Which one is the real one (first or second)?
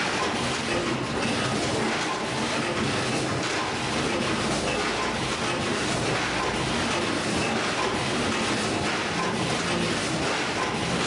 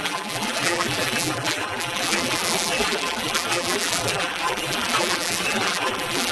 first